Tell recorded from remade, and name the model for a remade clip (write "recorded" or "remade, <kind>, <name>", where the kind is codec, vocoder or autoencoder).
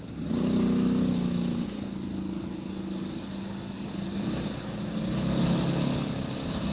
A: recorded